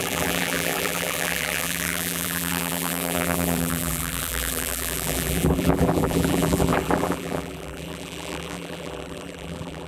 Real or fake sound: fake